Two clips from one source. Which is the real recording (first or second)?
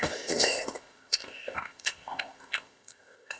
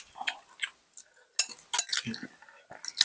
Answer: second